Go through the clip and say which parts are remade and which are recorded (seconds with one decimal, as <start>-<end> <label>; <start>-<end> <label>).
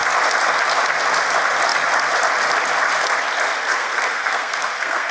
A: 0.0-3.6 recorded; 3.6-5.1 remade